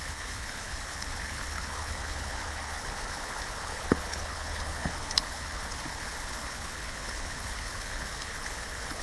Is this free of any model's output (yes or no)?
no